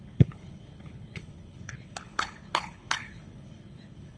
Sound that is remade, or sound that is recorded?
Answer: remade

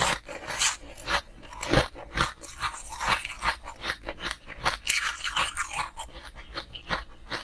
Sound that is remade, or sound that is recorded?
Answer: recorded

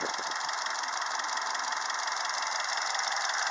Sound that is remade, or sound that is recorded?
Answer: recorded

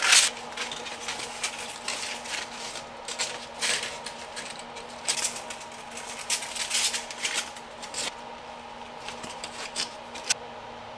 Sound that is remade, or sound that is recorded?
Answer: recorded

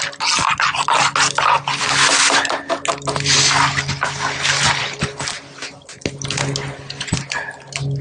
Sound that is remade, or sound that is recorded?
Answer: recorded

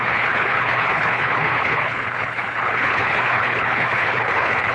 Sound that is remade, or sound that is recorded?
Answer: remade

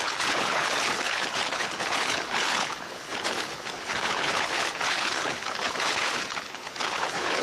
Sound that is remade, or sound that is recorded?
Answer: remade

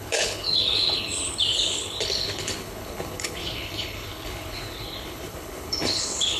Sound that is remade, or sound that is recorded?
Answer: remade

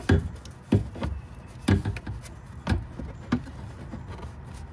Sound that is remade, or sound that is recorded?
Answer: recorded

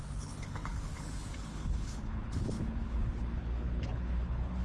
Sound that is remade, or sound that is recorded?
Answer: remade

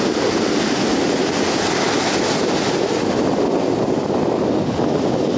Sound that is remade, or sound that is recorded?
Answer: recorded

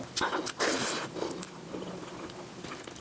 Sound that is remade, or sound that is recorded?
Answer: recorded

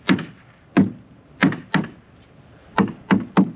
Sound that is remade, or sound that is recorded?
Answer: recorded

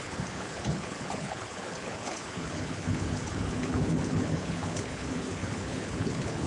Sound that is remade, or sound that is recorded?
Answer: remade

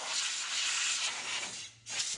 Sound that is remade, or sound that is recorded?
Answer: recorded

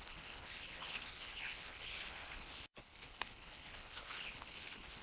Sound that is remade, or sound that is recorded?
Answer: remade